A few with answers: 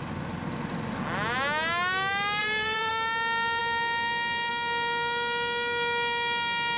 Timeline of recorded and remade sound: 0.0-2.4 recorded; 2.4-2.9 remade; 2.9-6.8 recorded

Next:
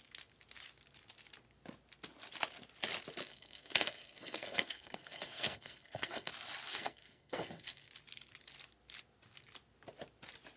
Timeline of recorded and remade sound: 0.0-3.2 recorded; 3.2-6.3 remade; 6.3-6.7 recorded; 6.7-7.9 remade; 7.9-10.6 recorded

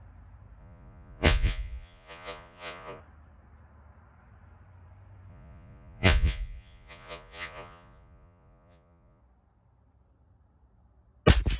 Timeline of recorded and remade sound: 0.0-0.6 recorded; 0.6-3.0 remade; 3.0-5.3 recorded; 5.3-9.2 remade; 9.2-11.6 recorded

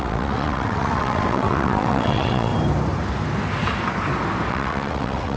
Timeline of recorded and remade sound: 0.0-2.5 remade; 2.5-4.5 recorded; 4.5-5.4 remade